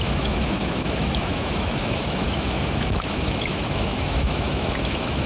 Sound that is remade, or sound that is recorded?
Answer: remade